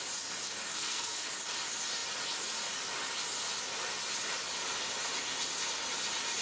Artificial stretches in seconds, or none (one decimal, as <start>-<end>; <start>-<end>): 0.7-1.3